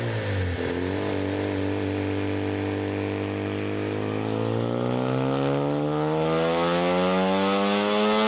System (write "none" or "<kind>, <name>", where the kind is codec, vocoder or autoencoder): none